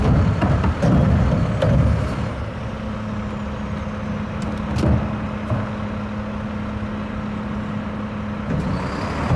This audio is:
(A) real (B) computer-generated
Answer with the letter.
A